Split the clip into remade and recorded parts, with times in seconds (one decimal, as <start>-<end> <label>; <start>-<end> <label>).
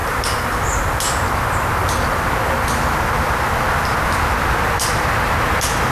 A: 0.0-0.8 remade; 0.8-5.9 recorded